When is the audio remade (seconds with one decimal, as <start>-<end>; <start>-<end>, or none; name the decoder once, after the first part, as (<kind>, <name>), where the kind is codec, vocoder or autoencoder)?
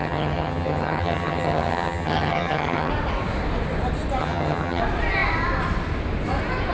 0.0-2.9 (vocoder, HiFi-GAN); 4.2-4.8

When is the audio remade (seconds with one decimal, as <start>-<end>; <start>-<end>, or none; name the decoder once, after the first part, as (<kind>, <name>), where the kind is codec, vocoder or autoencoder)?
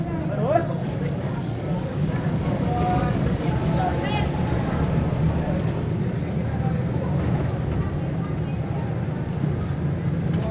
0.6-3.5 (codec, DAC)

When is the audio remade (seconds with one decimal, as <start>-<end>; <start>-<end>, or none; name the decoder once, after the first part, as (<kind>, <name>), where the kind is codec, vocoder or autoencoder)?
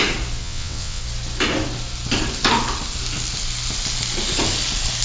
0.4-1.0 (vocoder, WaveNeXt)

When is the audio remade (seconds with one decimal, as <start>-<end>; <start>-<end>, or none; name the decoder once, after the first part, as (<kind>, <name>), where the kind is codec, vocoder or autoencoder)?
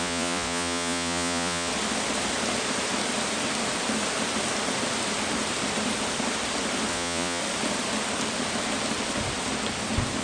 0.0-1.7 (vocoder, Vocos); 6.9-7.4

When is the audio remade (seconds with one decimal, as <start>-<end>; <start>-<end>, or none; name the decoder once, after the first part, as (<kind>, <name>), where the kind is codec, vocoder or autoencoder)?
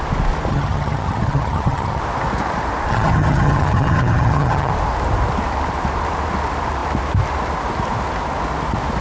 0.5-2.0 (vocoder, HiFi-GAN); 2.9-4.7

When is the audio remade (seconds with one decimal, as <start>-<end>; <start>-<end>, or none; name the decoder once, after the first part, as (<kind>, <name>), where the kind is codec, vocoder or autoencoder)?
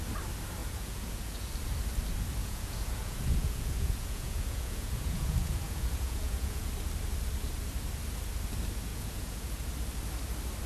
0.6-1.5 (vocoder, Vocos); 2.4-6.7; 8.9-9.7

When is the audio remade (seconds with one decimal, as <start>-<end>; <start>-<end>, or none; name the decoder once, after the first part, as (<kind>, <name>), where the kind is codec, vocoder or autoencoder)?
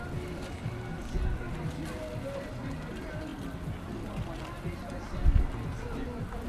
none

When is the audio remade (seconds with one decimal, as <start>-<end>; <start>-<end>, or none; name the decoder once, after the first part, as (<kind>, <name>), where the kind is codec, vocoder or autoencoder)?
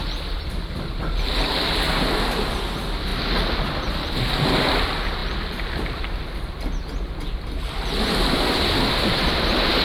none